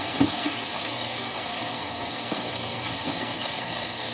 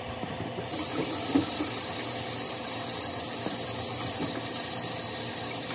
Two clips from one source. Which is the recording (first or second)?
second